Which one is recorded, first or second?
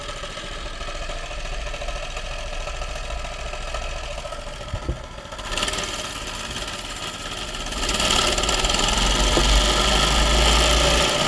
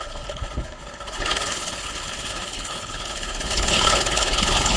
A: first